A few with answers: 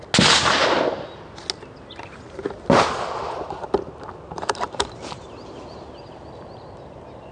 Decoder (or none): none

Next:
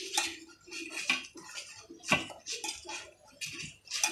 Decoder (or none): none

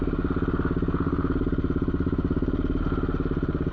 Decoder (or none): none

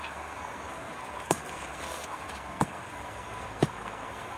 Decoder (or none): codec, SNAC